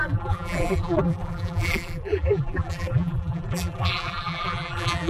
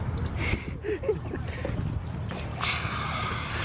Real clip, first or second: second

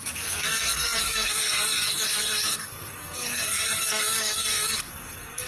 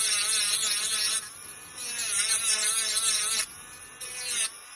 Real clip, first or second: second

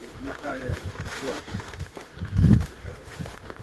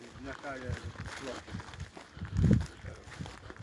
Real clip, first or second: second